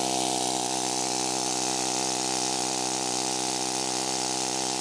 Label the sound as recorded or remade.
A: recorded